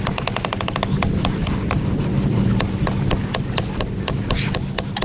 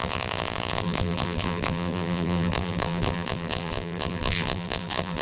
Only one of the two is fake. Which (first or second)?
second